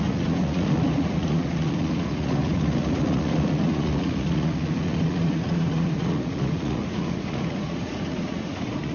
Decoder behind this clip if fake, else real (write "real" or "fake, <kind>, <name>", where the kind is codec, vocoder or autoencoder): fake, vocoder, Vocos